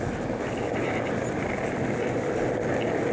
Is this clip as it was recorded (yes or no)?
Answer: yes